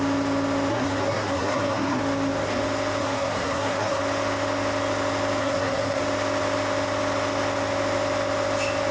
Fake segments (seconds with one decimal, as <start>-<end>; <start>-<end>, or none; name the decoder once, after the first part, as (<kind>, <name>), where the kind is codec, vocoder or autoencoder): 0.7-2.0 (codec, SNAC); 3.0-4.0; 5.4-6.0